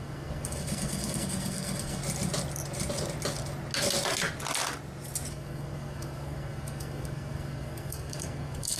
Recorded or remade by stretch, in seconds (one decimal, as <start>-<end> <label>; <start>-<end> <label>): 0.0-2.0 remade; 2.0-5.3 recorded; 5.3-8.8 remade